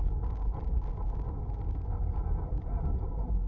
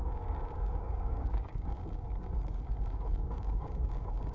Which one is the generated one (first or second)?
second